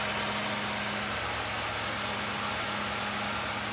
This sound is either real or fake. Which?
real